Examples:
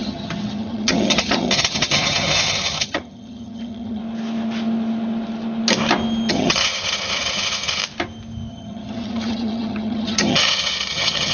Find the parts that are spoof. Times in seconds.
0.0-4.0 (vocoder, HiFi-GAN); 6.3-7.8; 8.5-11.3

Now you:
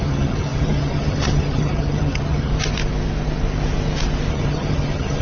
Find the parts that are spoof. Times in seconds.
0.0-2.5 (vocoder, HiFi-GAN); 4.3-5.2

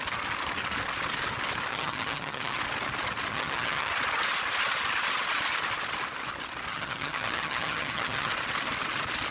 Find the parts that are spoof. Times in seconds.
1.7-2.6 (vocoder, HiFi-GAN); 3.3-3.9; 6.7-8.3

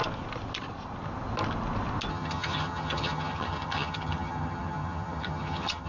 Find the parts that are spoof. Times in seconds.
2.1-5.9 (vocoder, HiFi-GAN)

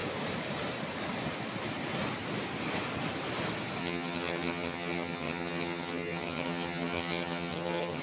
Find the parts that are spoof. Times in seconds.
3.8-8.0 (vocoder, HiFi-GAN)